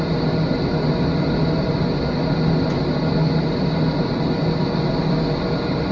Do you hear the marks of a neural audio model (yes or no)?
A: no